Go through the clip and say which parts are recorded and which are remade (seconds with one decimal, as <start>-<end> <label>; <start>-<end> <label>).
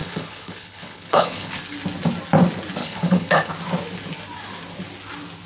0.0-1.5 remade; 1.5-2.8 recorded; 2.8-3.5 remade; 3.5-5.5 recorded